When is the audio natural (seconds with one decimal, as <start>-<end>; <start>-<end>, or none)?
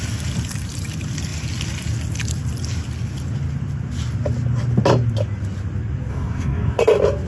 0.0-6.1; 6.8-7.3